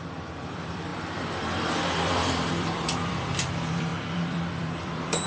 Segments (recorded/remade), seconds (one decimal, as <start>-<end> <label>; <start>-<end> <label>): 0.0-5.3 remade